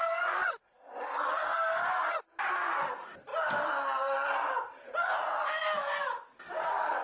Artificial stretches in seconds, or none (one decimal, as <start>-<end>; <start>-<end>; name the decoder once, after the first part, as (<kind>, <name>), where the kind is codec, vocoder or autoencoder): none